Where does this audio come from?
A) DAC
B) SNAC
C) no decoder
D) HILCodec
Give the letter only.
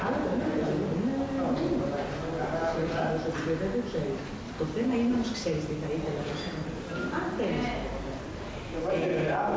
C